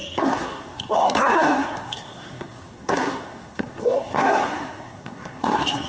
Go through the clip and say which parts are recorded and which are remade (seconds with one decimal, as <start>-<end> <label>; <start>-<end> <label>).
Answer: 0.0-5.9 remade